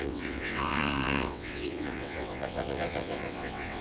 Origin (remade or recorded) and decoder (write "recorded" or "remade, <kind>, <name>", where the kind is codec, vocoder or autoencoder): remade, vocoder, WaveNeXt